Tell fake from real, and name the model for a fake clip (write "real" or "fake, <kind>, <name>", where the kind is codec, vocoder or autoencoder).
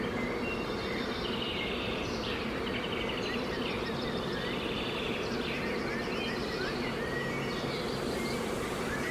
real